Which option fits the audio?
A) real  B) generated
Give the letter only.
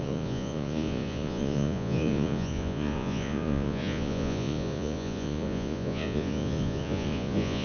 B